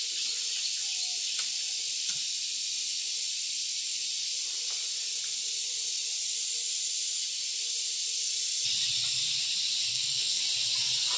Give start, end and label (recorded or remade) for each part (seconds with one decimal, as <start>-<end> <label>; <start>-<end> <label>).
0.0-9.9 recorded; 9.9-10.4 remade; 10.4-11.2 recorded